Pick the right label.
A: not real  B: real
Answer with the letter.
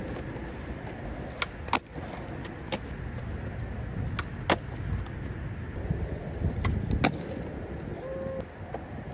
B